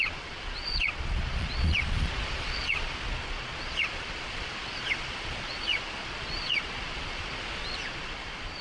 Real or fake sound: fake